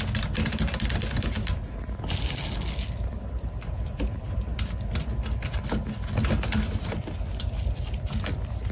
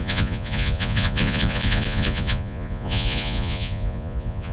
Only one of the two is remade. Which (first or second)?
second